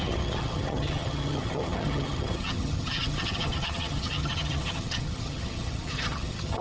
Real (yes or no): no